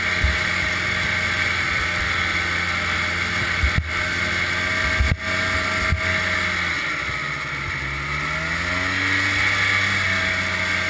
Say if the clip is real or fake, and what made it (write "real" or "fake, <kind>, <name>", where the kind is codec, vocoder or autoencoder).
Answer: real